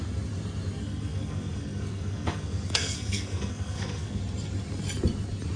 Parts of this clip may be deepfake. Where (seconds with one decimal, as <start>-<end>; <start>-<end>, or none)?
0.8-4.2